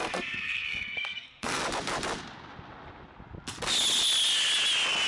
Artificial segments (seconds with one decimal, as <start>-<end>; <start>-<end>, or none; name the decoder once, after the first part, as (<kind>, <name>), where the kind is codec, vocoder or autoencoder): 0.0-1.6 (codec, SNAC)